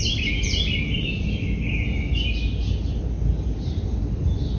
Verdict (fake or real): real